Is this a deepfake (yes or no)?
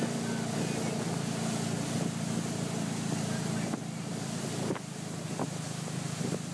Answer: no